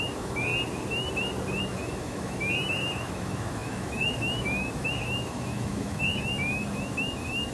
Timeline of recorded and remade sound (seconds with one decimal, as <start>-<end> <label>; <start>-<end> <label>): 0.0-0.5 remade; 0.5-1.6 recorded; 1.6-7.5 remade